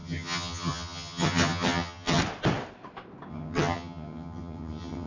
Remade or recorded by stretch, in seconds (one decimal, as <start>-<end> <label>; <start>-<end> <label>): 0.0-2.2 remade; 2.2-3.3 recorded; 3.3-5.1 remade